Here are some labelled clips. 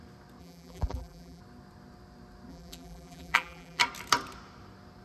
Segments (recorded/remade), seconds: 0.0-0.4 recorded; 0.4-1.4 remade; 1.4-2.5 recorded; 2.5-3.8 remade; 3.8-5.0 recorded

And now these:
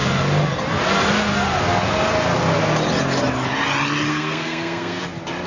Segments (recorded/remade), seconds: 0.0-4.1 recorded; 4.1-5.0 remade; 5.0-5.5 recorded

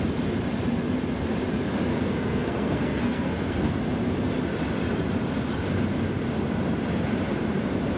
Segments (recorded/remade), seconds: 0.0-1.9 recorded; 1.9-3.8 remade; 3.8-8.0 recorded

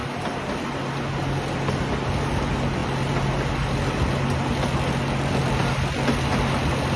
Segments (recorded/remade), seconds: 0.0-7.0 recorded

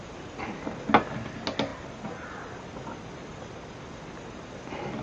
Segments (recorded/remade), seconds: 0.0-5.0 recorded

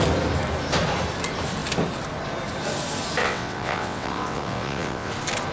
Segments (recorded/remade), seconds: 0.0-3.2 recorded; 3.2-5.1 remade; 5.1-5.5 recorded

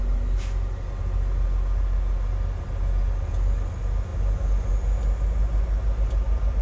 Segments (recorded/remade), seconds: 0.0-6.6 recorded

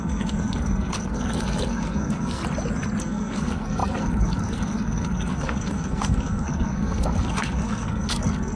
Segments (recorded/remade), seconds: 0.0-2.4 remade; 2.4-3.0 recorded; 3.0-8.6 remade